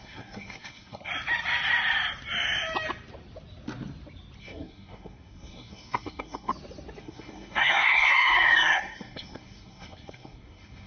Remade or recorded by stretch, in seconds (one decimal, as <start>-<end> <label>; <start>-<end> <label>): 0.0-1.1 remade; 1.1-4.4 recorded; 4.4-6.5 remade; 6.5-7.0 recorded; 7.0-10.9 remade